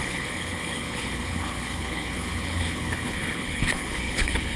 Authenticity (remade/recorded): remade